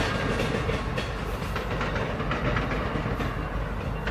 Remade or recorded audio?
recorded